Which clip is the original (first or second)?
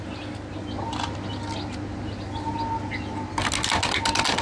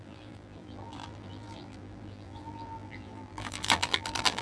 first